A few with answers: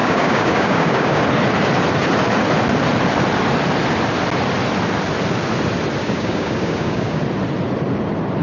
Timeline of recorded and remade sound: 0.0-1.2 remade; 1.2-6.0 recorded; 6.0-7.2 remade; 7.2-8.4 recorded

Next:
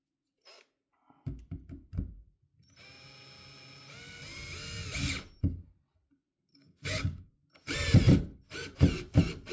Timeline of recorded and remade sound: 0.0-6.5 recorded; 6.5-7.3 remade; 7.3-9.5 recorded

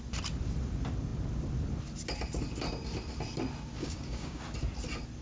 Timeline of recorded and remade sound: 0.0-3.8 recorded; 3.8-4.4 remade; 4.4-5.2 recorded

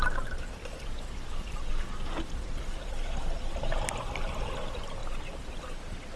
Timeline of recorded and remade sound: 0.0-6.2 recorded

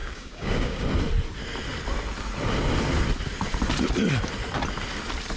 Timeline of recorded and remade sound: 0.0-0.8 remade; 0.8-5.4 recorded

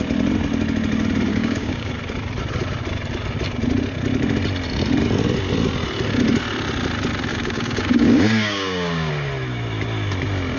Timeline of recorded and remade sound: 0.0-1.3 recorded; 1.3-1.9 remade; 1.9-7.3 recorded; 7.3-9.1 remade; 9.1-10.6 recorded